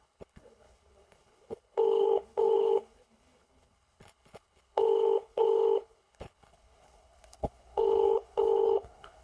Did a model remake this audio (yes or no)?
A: yes